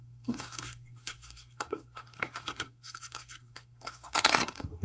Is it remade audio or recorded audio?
remade